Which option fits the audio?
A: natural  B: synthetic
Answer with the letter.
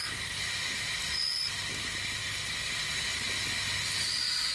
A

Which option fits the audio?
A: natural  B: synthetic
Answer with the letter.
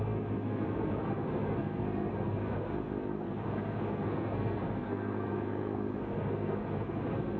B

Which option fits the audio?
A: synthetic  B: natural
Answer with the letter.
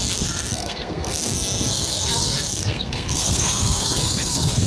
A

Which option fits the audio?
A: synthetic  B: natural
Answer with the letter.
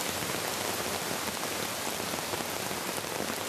B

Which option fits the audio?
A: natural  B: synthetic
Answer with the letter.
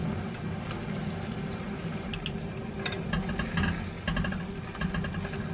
A